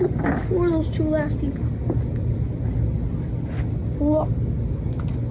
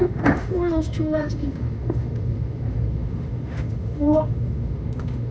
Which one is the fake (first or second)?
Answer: second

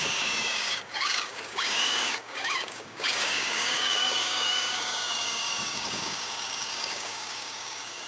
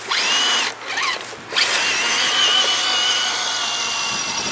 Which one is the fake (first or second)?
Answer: first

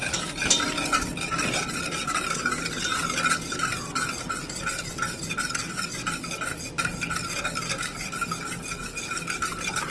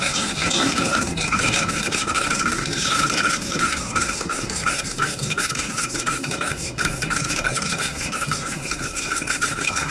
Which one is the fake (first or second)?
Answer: second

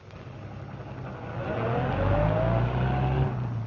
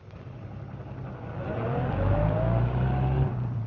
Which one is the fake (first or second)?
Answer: second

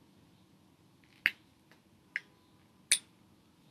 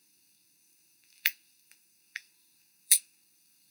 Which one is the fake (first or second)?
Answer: second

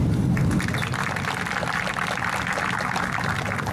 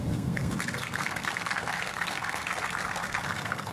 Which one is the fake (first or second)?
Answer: second